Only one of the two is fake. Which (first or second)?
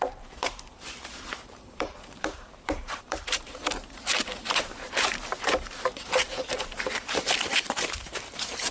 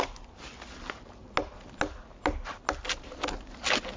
first